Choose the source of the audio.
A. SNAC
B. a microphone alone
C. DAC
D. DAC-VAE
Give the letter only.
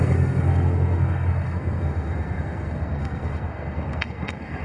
A